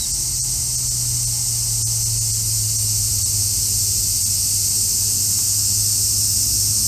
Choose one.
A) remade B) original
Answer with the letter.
B